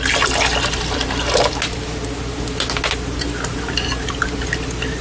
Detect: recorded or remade recorded